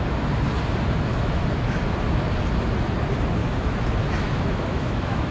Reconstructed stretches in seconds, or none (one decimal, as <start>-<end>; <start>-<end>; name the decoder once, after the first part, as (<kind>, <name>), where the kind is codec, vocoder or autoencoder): 1.1-1.8 (autoencoder, DAC-VAE); 3.4-5.3